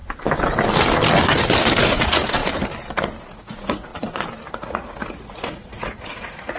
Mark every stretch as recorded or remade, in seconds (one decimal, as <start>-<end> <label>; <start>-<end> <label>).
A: 0.0-1.8 recorded; 1.8-2.4 remade; 2.4-3.2 recorded; 3.2-3.9 remade; 3.9-4.5 recorded; 4.5-6.6 remade